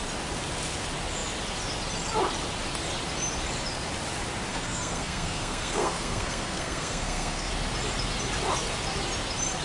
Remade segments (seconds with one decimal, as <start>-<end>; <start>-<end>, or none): 4.5-7.5